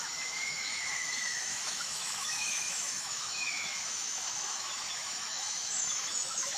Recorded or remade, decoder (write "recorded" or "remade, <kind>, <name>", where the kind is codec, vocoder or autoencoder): remade, autoencoder, DAC-VAE